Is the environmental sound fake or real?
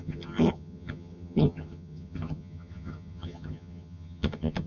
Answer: fake